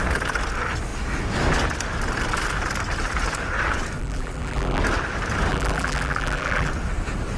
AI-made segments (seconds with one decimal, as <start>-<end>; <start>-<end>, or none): 4.0-4.8; 5.5-6.7